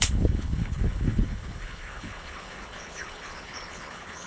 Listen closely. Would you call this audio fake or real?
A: fake